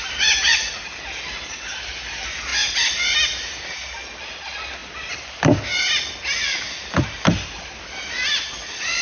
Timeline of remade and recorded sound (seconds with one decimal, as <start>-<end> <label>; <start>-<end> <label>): 0.0-9.0 recorded